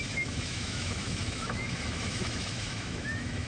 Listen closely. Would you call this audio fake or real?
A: fake